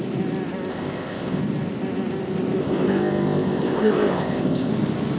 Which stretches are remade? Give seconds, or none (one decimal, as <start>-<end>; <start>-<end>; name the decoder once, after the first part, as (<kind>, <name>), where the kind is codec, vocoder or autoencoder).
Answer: 0.7-1.4 (codec, ZipCodec); 2.6-4.7